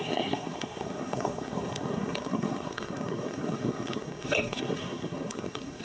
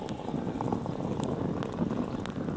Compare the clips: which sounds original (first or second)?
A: second